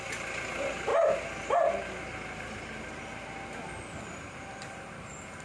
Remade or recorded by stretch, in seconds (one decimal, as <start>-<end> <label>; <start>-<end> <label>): 0.0-5.4 recorded